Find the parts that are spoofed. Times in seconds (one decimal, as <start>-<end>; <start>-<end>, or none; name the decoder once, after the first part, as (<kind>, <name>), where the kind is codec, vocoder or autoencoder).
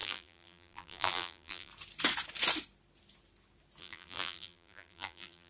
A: 0.0-1.7 (vocoder, BigVGAN v2); 3.8-5.5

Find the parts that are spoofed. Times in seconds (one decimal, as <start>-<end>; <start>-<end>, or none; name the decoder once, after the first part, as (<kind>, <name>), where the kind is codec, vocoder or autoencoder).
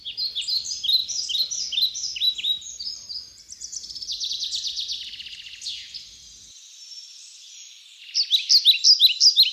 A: 1.0-4.3 (vocoder, BigVGAN v2)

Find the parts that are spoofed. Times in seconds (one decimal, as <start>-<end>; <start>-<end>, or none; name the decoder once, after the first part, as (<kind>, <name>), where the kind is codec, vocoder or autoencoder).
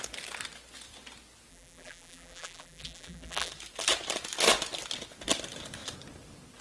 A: 1.5-3.5 (vocoder, BigVGAN v2)